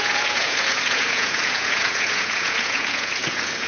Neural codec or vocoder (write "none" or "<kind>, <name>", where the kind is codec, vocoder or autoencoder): vocoder, Vocos